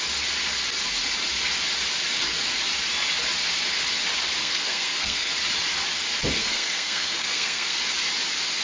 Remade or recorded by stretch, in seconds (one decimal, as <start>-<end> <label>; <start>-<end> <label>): 0.0-4.4 recorded; 4.4-5.3 remade; 5.3-6.4 recorded; 6.4-7.8 remade; 7.8-8.6 recorded